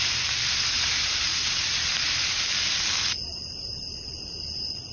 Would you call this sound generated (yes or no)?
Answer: no